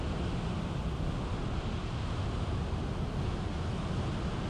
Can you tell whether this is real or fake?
real